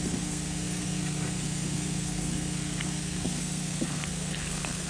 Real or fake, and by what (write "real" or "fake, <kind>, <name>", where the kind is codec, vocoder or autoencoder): fake, codec, SNAC